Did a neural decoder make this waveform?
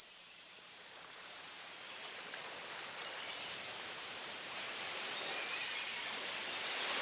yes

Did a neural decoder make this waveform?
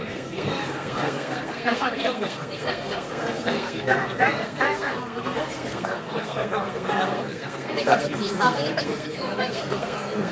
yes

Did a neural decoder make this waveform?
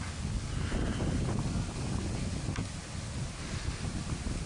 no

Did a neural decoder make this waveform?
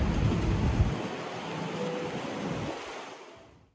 no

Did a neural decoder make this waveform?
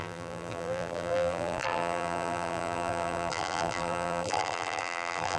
yes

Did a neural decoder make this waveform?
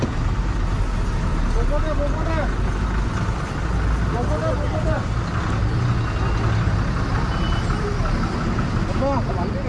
no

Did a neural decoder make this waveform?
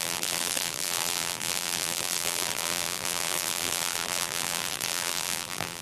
yes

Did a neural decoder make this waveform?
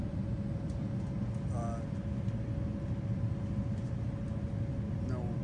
no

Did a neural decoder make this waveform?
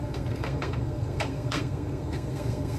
yes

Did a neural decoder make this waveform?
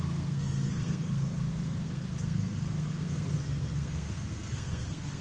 yes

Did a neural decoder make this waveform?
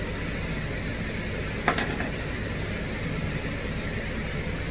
no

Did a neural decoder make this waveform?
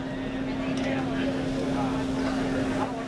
no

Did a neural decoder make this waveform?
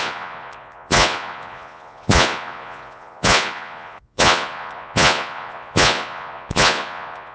yes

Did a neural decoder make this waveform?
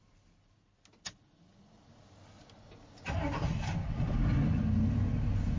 no